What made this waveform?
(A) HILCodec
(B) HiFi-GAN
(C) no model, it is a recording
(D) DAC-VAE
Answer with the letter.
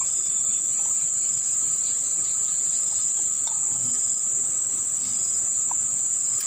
C